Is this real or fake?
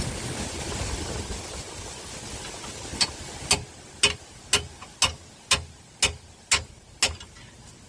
real